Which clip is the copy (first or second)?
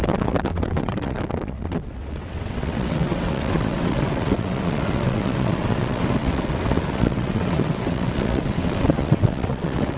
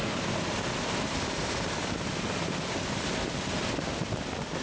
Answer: first